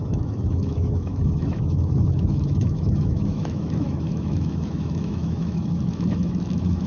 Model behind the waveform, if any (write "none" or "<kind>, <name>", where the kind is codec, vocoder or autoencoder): autoencoder, DAC-VAE